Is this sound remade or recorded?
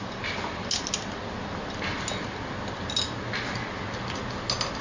recorded